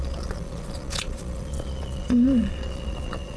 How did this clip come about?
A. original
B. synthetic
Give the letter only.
B